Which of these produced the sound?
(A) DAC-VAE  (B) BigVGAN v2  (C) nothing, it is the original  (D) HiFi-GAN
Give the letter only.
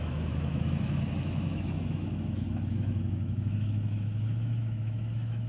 A